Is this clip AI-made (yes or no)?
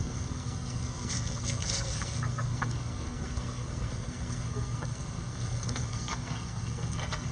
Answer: yes